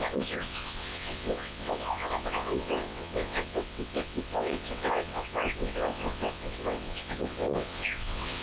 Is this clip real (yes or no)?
no